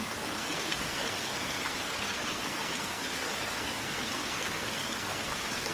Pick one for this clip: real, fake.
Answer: fake